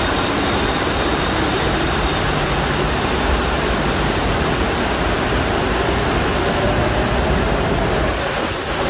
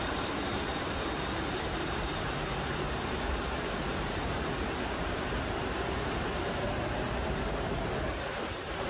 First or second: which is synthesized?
second